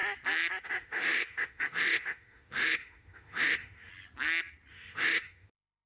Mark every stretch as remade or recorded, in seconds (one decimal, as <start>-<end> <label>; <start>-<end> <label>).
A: 0.0-0.6 recorded; 0.6-3.9 remade; 3.9-4.7 recorded; 4.7-5.9 remade